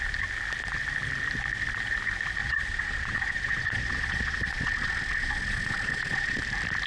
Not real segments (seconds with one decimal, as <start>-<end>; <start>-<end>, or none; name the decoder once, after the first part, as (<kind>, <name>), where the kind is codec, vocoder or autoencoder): 2.4-6.4 (vocoder, Vocos)